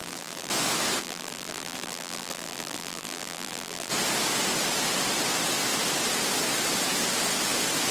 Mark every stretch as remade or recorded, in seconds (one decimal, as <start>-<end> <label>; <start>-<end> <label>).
0.0-0.5 remade; 0.5-1.0 recorded; 1.0-3.9 remade; 3.9-7.9 recorded